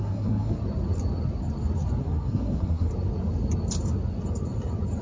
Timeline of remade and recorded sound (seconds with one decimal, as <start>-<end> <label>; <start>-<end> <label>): 0.0-0.6 remade; 0.6-2.0 recorded; 2.0-2.9 remade; 2.9-5.0 recorded